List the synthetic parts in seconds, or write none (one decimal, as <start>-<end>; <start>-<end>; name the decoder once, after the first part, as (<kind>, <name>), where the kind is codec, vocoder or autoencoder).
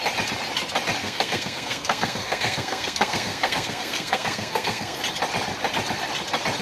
1.0-5.0 (codec, SNAC)